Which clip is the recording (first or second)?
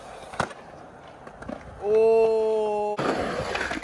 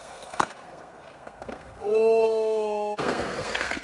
first